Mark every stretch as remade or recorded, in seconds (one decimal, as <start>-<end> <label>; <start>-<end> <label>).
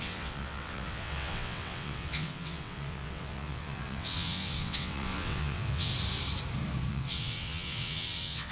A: 0.0-5.9 remade; 5.9-6.9 recorded; 6.9-8.5 remade